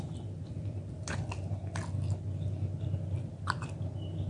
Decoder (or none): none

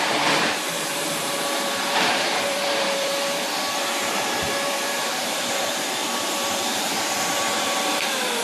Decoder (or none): vocoder, BigVGAN v2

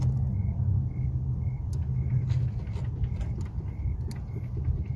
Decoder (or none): none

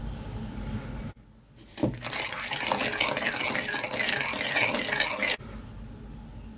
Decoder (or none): none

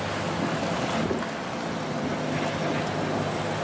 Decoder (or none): none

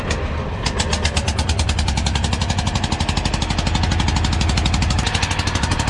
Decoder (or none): none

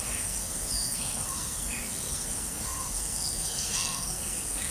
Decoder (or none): codec, SNAC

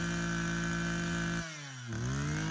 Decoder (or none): none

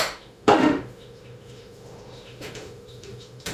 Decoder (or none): autoencoder, DAC-VAE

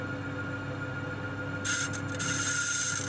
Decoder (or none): none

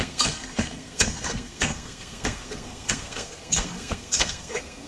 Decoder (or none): codec, SNAC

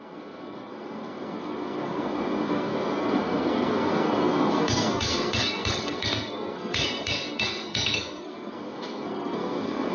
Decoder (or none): codec, SNAC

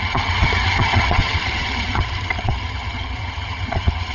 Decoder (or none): vocoder, HiFi-GAN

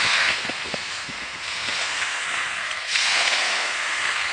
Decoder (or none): codec, SNAC